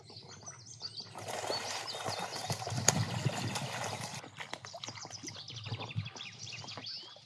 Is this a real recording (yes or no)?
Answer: yes